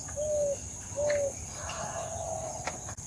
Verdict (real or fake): real